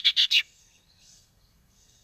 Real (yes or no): no